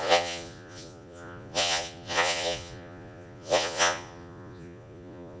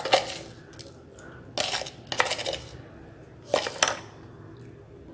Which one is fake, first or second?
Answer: first